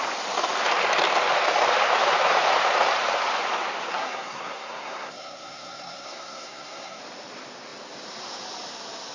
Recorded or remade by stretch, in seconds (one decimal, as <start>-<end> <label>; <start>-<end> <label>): 0.0-3.9 recorded; 3.9-7.0 remade; 7.0-9.1 recorded